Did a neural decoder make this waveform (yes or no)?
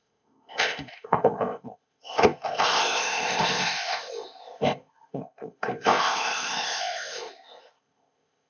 yes